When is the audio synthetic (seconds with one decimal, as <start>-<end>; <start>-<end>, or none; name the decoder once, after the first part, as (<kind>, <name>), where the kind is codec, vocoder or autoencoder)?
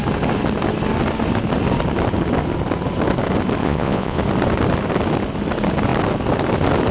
3.6-4.2 (vocoder, Vocos)